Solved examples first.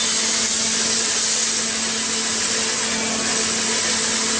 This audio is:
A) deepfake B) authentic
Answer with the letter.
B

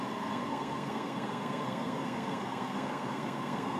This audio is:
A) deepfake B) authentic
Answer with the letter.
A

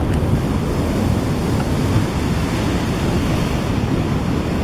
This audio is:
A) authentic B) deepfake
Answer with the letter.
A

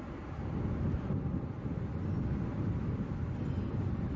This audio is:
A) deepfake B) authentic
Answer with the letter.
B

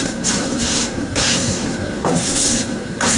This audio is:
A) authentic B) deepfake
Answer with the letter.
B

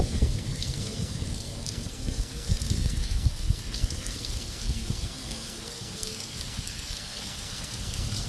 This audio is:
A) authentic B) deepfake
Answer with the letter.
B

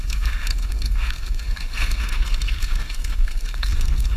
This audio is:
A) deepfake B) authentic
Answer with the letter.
A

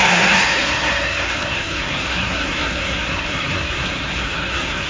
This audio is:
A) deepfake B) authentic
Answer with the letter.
A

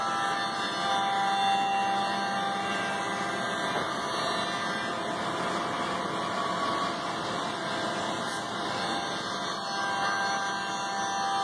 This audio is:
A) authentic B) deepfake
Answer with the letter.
A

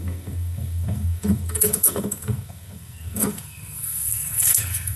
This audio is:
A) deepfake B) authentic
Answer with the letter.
A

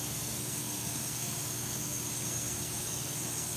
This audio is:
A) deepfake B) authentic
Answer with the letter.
A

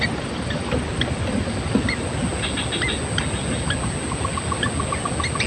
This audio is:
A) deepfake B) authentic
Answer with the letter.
B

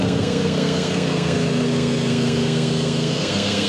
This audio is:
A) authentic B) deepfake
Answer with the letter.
B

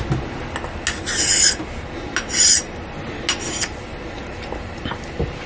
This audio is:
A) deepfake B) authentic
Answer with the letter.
B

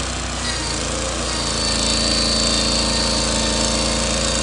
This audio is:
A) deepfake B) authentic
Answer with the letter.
B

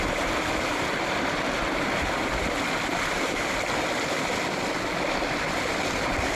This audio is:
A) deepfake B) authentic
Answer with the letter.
B